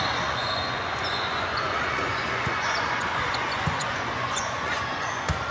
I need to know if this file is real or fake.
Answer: fake